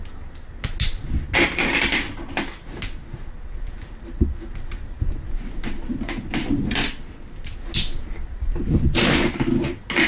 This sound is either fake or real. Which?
real